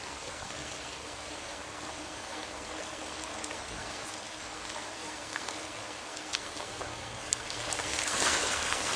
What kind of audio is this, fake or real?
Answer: fake